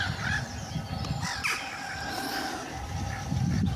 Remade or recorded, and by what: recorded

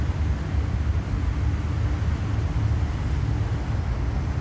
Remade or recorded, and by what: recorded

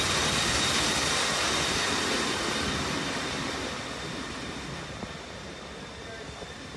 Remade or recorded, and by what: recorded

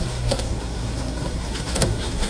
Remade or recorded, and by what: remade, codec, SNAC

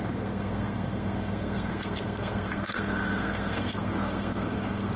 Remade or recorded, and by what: remade, codec, SNAC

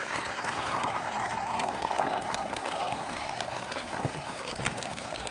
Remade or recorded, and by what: remade, codec, SNAC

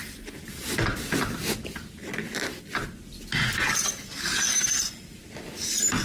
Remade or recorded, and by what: recorded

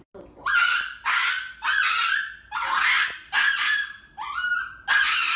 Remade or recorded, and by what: recorded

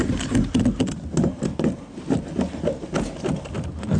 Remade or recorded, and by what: recorded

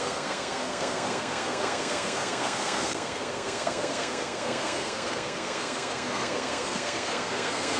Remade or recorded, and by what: remade, codec, SNAC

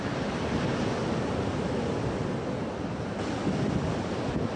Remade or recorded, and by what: recorded